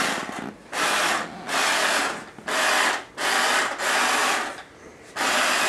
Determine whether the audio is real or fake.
real